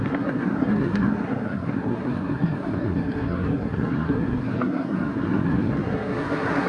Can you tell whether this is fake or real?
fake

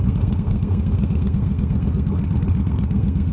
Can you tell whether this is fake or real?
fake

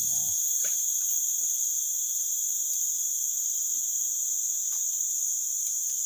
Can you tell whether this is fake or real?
real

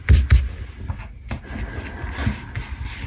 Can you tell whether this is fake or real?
real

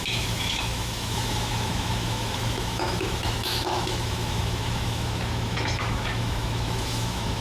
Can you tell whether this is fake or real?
fake